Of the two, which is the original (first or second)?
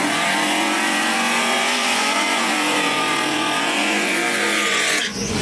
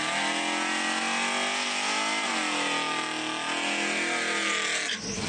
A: second